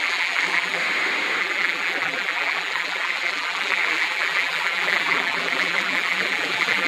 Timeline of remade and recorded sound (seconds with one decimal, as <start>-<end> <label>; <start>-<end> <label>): 0.0-0.8 remade; 0.8-1.4 recorded; 1.4-6.9 remade